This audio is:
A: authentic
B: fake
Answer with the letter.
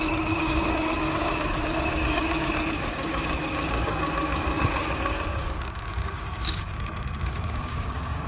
B